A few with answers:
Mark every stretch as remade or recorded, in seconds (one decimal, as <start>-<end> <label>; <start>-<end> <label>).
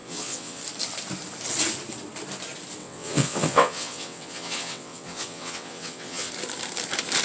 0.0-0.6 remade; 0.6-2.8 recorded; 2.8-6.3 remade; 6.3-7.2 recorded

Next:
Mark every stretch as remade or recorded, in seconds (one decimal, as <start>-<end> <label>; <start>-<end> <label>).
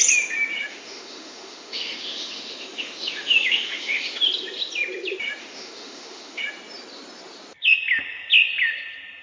0.0-0.7 recorded; 0.7-4.2 remade; 4.2-5.4 recorded; 5.4-6.4 remade; 6.4-9.2 recorded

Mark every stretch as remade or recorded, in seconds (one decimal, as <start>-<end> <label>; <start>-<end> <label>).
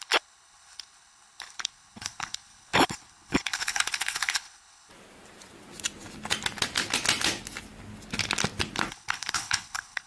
0.0-4.9 remade; 4.9-8.9 recorded; 8.9-10.1 remade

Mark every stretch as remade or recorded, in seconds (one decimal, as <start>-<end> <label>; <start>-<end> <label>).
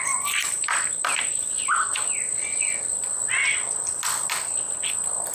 0.0-5.3 recorded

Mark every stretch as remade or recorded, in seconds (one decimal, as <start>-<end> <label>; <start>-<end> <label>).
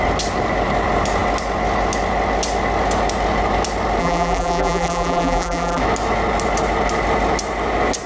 0.0-4.0 recorded; 4.0-5.8 remade; 5.8-8.1 recorded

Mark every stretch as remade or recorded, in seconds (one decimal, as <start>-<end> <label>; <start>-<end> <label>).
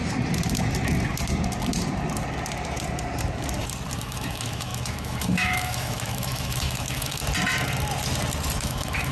0.0-4.0 recorded; 4.0-7.2 remade; 7.2-8.6 recorded; 8.6-9.1 remade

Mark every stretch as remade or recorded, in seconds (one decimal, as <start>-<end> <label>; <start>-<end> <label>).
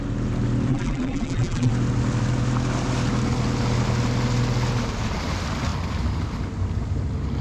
0.0-0.7 recorded; 0.7-1.7 remade; 1.7-7.4 recorded